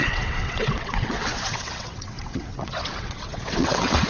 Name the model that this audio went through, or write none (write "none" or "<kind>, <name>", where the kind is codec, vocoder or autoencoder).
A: vocoder, WaveNeXt